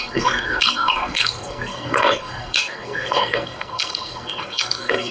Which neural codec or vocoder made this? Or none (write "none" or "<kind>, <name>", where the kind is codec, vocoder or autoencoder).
codec, SNAC